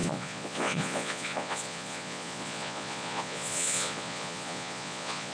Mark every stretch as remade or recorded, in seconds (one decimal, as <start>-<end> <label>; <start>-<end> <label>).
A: 0.0-5.3 remade